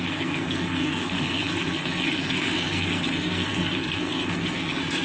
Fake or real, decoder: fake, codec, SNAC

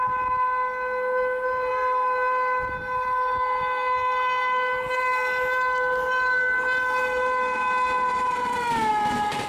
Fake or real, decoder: real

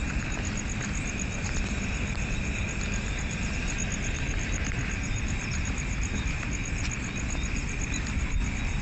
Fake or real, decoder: real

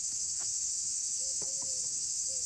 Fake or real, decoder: fake, autoencoder, DAC-VAE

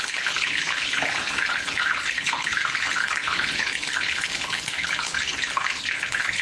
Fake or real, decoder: fake, codec, HILCodec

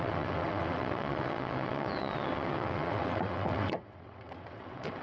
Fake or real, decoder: fake, vocoder, WaveNeXt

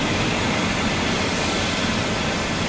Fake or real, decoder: real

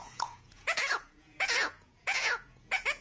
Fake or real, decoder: fake, vocoder, Vocos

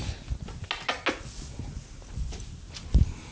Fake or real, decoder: real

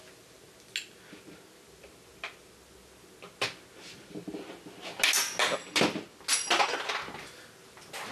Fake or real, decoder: real